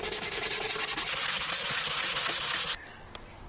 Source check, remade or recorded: recorded